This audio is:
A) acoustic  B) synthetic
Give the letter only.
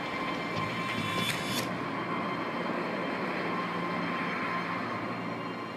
A